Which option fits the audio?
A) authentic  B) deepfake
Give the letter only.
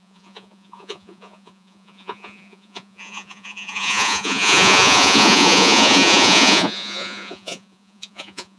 B